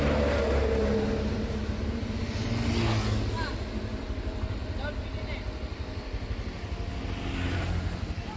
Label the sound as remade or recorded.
recorded